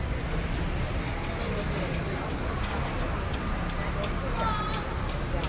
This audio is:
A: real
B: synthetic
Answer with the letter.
A